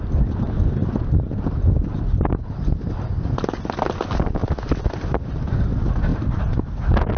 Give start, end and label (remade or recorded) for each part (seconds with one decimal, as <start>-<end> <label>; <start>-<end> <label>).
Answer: 0.0-7.2 recorded